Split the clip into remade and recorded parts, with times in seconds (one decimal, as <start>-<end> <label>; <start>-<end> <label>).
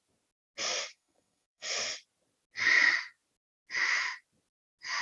0.0-0.9 recorded; 0.9-1.7 remade; 1.7-5.0 recorded